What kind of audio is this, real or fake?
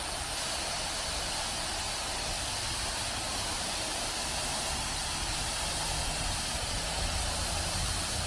real